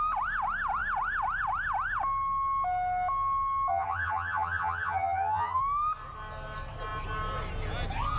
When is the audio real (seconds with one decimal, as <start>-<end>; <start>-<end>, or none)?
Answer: 0.0-3.7; 5.6-8.2